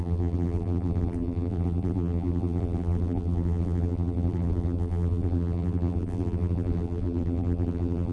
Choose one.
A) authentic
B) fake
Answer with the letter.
B